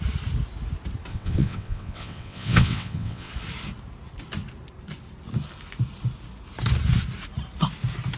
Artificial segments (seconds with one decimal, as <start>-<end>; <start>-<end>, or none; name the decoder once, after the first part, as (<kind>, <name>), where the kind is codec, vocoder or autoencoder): 1.1-3.3 (vocoder, WaveNeXt)